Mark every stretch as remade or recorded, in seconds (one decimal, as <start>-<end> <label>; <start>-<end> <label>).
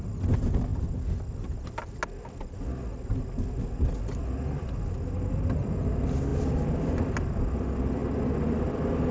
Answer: 0.0-9.1 recorded